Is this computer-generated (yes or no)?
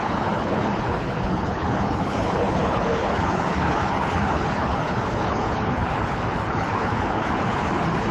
yes